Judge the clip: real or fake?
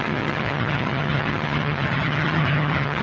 fake